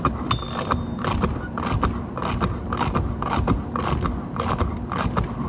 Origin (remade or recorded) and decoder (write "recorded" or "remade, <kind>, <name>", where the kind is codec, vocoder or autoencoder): recorded